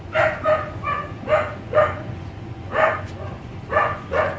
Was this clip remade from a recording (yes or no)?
yes